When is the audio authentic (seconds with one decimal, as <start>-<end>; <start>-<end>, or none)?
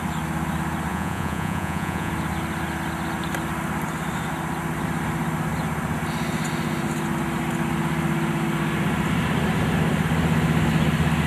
0.0-0.9; 2.1-11.3